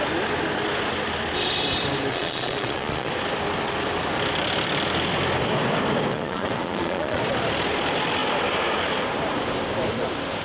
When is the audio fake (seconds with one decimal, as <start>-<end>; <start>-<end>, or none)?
2.1-3.1; 6.1-7.2